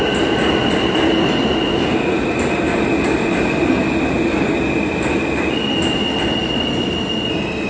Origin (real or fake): real